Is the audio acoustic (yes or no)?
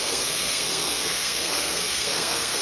no